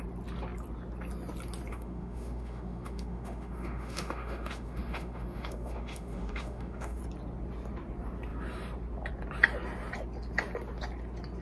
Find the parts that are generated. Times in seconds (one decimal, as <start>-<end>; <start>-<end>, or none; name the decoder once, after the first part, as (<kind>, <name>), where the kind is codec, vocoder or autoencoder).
1.7-7.0 (autoencoder, DAC-VAE)

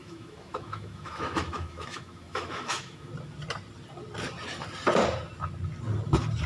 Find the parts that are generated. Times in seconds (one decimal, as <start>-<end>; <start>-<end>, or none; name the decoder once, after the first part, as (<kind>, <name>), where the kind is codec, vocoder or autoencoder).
0.0-3.1 (autoencoder, DAC-VAE)

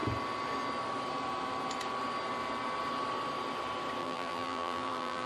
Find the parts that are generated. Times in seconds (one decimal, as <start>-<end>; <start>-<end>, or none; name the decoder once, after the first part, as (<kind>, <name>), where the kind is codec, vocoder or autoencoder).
4.0-5.3 (vocoder, BigVGAN v2)

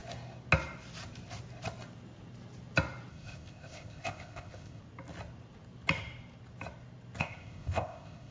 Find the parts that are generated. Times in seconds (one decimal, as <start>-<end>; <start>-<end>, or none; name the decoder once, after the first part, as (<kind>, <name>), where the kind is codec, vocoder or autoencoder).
3.1-4.8 (codec, ZipCodec); 7.2-8.3